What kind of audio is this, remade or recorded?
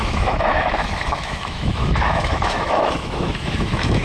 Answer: remade